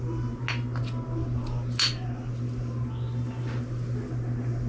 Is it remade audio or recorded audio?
recorded